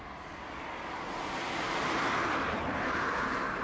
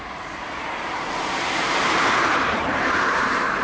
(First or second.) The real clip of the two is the first